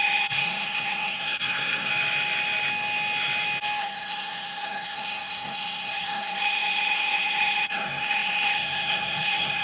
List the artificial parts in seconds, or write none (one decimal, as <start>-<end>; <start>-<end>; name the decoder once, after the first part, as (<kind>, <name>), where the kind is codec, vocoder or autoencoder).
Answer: 0.0-1.9 (codec, SNAC); 3.8-9.6